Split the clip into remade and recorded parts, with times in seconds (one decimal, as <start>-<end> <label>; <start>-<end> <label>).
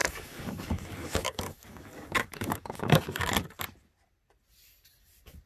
0.0-3.3 remade; 3.3-5.5 recorded